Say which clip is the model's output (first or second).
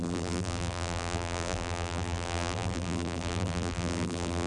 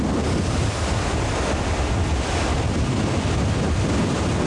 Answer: first